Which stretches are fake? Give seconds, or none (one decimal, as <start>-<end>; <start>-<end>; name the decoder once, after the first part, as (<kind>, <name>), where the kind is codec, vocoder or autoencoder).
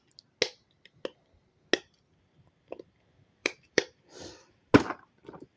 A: 3.4-4.5 (vocoder, BigVGAN v2)